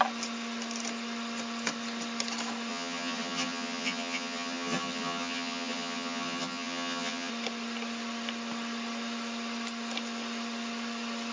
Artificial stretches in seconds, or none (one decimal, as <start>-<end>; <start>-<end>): 2.7-7.3